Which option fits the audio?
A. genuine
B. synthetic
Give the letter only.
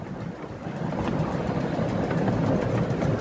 A